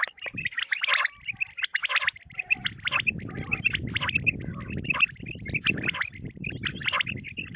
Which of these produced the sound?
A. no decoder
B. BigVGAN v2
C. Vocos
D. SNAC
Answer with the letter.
A